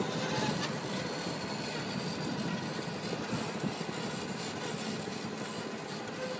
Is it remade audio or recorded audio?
recorded